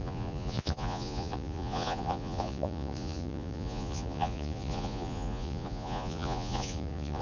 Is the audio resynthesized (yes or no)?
yes